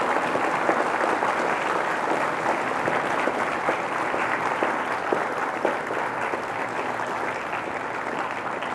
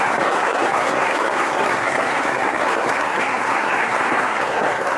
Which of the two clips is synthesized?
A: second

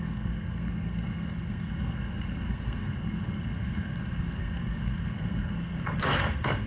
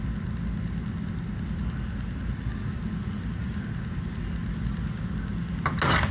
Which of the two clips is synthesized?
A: first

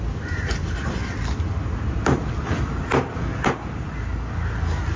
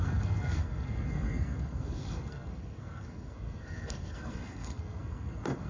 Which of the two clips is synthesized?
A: second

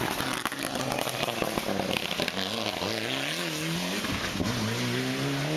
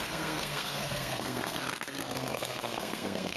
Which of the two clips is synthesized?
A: second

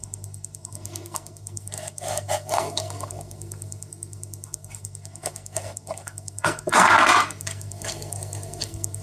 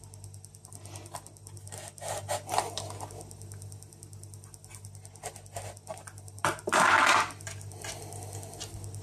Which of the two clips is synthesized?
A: first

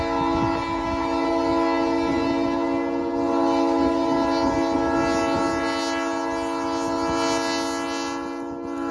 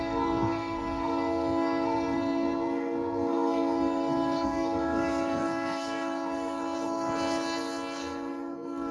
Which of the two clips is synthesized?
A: second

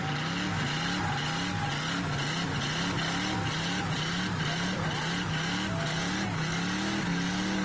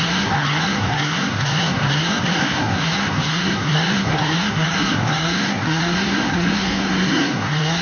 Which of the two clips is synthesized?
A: second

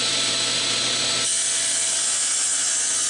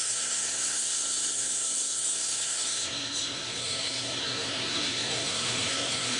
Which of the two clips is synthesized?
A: second